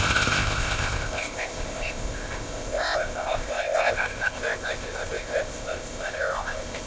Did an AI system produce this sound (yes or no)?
yes